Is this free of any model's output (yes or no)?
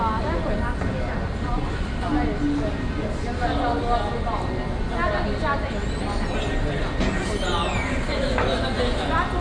yes